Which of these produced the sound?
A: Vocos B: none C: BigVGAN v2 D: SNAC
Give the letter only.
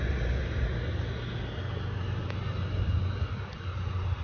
B